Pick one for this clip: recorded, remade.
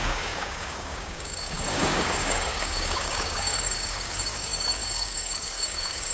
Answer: remade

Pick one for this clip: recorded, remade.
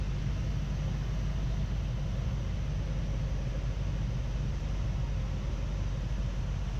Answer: recorded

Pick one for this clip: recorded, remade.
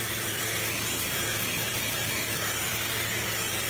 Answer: remade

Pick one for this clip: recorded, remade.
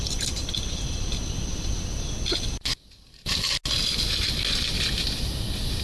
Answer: recorded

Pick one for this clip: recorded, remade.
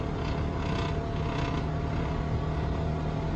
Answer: recorded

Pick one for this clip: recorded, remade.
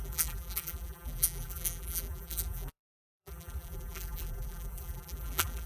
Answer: remade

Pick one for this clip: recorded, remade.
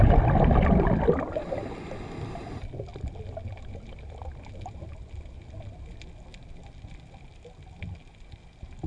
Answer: recorded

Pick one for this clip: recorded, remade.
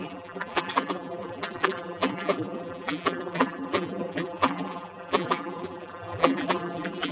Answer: remade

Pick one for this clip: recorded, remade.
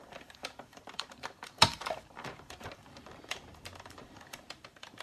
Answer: remade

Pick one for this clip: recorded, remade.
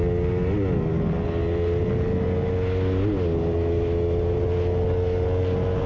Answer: recorded